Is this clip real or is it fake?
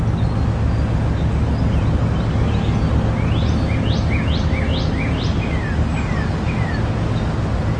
real